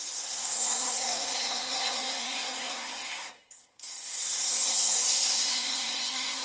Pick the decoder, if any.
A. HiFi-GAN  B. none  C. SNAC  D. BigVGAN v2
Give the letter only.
C